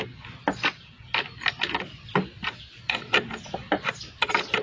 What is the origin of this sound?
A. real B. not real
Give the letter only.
A